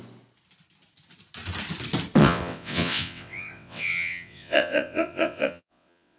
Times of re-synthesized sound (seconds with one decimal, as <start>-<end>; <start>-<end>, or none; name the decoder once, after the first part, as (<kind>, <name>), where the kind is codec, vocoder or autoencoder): 2.2-6.2 (vocoder, WaveNeXt)